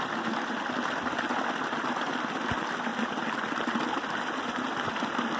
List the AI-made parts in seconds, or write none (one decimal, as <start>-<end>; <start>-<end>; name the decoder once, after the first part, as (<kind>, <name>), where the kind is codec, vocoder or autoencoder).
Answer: none